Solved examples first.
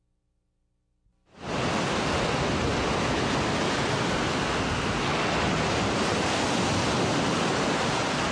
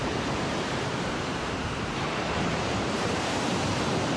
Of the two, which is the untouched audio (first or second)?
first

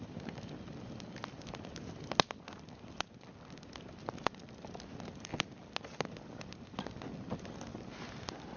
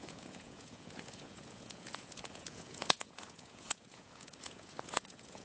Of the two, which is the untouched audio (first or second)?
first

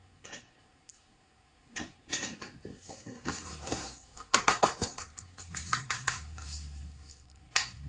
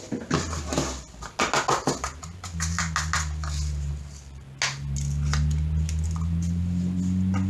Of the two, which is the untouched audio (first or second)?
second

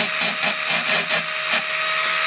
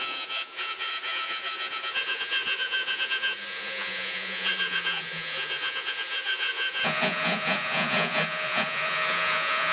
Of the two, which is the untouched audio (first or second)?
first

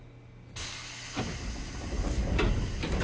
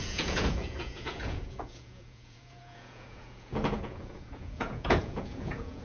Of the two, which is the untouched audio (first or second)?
first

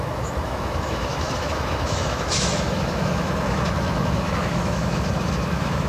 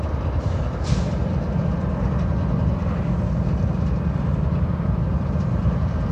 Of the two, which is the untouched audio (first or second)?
second